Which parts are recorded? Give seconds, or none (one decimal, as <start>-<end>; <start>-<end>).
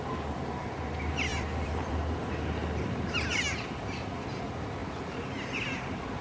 0.0-1.3; 2.3-6.2